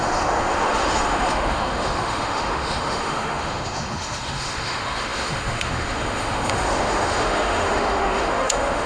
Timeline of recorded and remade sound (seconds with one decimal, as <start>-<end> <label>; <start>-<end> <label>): 0.0-8.9 remade